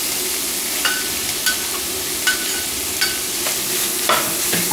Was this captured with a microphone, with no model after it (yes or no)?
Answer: no